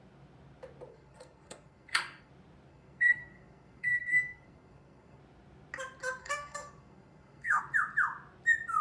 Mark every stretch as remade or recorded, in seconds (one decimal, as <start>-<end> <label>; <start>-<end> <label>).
0.0-0.9 recorded; 0.9-2.3 remade; 2.3-2.7 recorded; 2.7-5.2 remade; 5.2-6.2 recorded; 6.2-7.6 remade; 7.6-8.8 recorded